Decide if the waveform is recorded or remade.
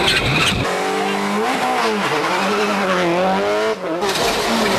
recorded